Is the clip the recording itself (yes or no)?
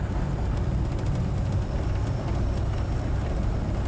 no